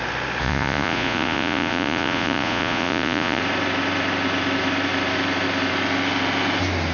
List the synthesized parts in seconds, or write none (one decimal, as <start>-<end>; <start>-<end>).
0.4-3.4